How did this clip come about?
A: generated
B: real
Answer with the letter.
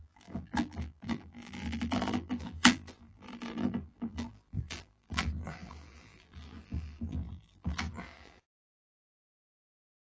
A